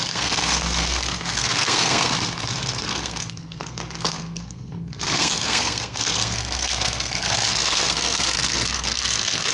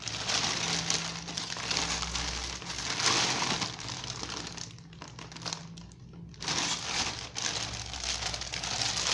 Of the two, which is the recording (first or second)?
second